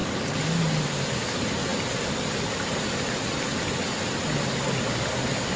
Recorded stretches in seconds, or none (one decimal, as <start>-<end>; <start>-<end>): 0.0-5.6